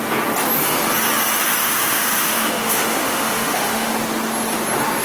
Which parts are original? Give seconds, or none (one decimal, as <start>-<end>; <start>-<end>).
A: 0.0-1.6; 3.9-5.0